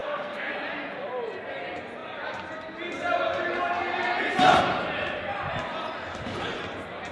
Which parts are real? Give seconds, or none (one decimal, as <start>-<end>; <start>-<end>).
0.5-7.1